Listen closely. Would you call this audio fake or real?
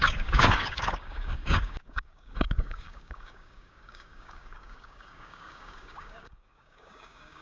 fake